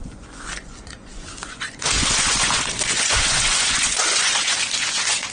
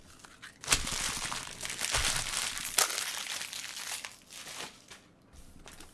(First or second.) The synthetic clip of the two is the first